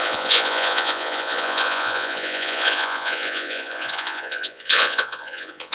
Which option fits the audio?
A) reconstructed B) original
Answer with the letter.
A